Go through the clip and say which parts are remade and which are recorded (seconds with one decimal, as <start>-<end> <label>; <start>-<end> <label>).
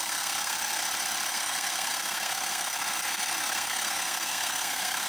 0.0-0.8 remade; 0.8-1.3 recorded; 1.3-5.1 remade